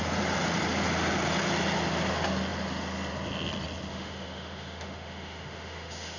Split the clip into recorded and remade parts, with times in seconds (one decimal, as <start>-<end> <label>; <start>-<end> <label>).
0.0-3.9 recorded; 3.9-6.2 remade